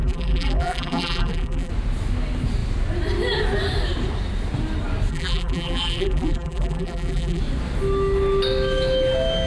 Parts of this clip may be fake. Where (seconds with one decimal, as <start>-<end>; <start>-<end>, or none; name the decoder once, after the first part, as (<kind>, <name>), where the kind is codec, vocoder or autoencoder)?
0.0-1.7 (vocoder, BigVGAN v2); 5.1-7.4